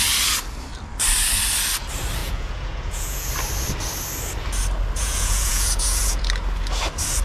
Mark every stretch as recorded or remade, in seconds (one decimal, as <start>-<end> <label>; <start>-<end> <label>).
0.0-2.2 recorded; 2.2-3.3 remade; 3.3-5.0 recorded; 5.0-6.2 remade; 6.2-7.2 recorded